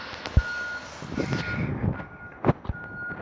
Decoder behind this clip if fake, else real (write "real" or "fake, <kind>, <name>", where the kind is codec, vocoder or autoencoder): real